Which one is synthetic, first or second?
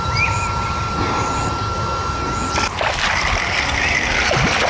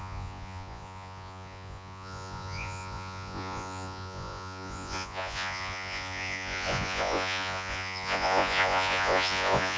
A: second